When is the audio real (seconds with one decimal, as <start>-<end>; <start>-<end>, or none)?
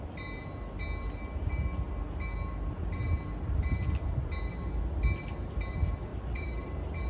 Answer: 0.0-6.1